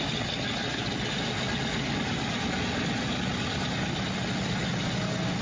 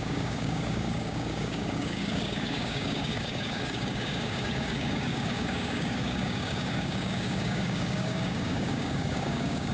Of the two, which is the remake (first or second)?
second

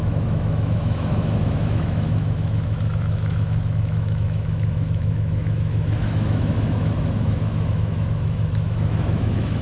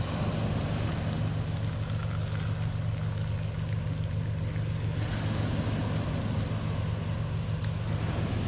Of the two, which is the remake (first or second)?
first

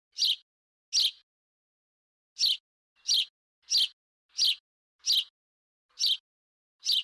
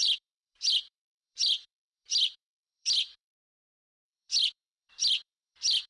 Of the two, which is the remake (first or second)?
second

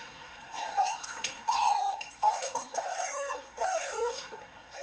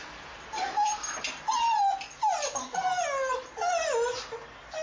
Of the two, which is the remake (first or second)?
first